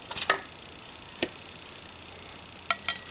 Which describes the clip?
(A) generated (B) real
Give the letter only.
B